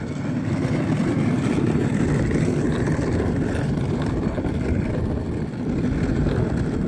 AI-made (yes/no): no